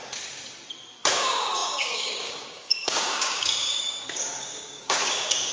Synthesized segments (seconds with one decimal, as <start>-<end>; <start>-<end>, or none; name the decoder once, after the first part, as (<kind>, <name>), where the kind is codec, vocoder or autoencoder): 1.1-5.5 (codec, DAC)